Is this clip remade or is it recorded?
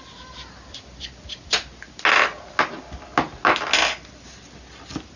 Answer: recorded